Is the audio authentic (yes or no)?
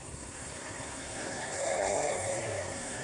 no